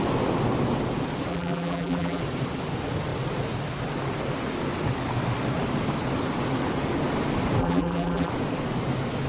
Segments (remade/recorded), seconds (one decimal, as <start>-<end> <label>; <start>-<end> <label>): 0.0-1.3 recorded; 1.3-2.2 remade; 2.2-7.6 recorded; 7.6-8.3 remade; 8.3-9.3 recorded